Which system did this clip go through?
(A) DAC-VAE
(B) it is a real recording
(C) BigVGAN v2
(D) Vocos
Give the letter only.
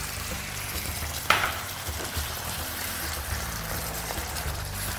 C